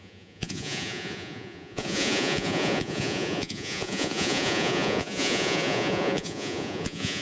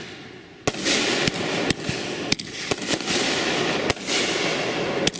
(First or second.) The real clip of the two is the second